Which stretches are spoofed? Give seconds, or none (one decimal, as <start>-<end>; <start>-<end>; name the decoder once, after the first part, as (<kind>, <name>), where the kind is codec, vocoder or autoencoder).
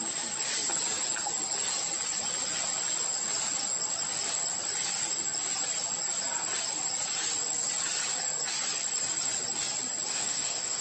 10.1-10.8 (autoencoder, DAC-VAE)